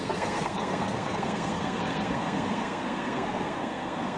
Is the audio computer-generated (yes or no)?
yes